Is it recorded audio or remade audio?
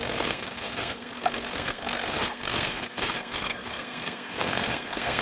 remade